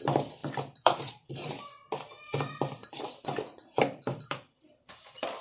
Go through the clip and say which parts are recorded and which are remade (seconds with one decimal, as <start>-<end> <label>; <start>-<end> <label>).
0.0-0.4 recorded; 0.4-1.5 remade; 1.5-2.8 recorded; 2.8-4.9 remade; 4.9-5.4 recorded